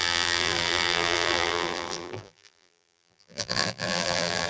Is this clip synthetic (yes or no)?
yes